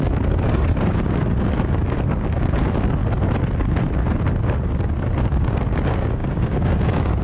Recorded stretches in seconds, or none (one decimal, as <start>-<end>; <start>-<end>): 3.0-4.4

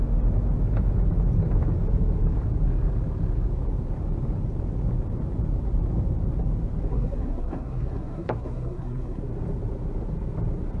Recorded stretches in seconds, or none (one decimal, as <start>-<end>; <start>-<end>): 0.0-6.9; 9.2-10.8

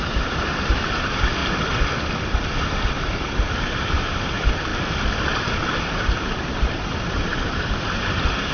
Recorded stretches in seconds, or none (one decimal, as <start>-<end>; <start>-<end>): 1.4-2.8; 4.7-5.4

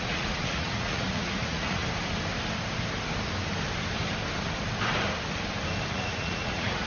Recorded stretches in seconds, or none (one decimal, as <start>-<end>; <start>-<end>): 1.8-5.9

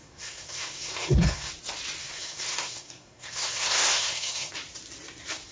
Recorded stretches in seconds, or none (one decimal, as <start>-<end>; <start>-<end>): 1.5-2.0; 4.5-5.5